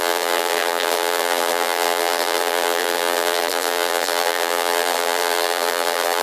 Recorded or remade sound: remade